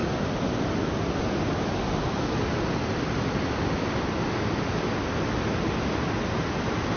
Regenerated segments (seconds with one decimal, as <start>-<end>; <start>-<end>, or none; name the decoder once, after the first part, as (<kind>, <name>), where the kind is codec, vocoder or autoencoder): none